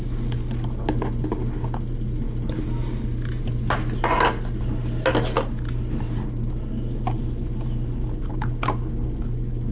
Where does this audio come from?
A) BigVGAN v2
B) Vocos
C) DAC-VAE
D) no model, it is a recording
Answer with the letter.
D